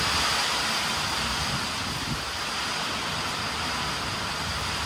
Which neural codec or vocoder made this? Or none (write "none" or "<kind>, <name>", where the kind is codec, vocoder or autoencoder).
none